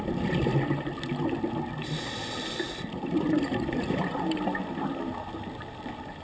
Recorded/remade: recorded